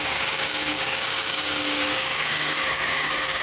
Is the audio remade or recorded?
remade